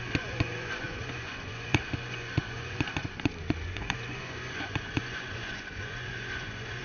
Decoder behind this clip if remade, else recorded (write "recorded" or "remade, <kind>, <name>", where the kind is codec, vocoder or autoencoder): remade, vocoder, Vocos